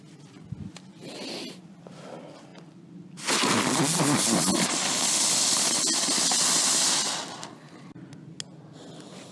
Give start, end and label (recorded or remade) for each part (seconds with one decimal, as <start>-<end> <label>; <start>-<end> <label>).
0.0-9.3 recorded